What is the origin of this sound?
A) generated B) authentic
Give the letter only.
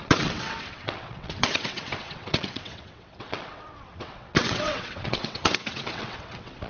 A